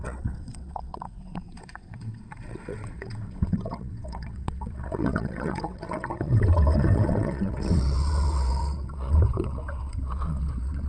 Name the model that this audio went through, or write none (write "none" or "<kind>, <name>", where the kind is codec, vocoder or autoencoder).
vocoder, WaveNeXt